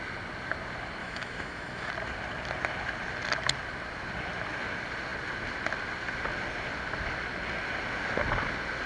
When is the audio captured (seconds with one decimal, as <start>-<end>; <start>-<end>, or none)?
0.0-1.0; 1.9-8.9